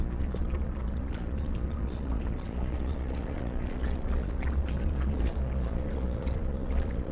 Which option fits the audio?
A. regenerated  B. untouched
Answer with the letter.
A